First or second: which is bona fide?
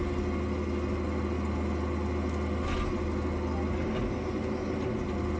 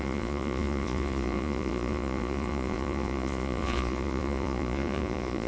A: first